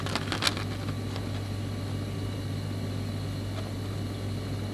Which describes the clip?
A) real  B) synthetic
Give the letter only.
A